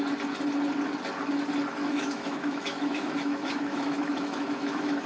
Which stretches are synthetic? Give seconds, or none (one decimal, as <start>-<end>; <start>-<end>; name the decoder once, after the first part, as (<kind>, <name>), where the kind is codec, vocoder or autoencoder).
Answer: 1.7-5.1 (autoencoder, DAC-VAE)